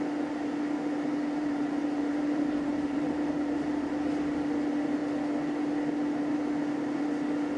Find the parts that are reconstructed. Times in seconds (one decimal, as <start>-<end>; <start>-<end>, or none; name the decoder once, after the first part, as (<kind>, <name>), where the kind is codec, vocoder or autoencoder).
1.4-3.9 (vocoder, BigVGAN v2)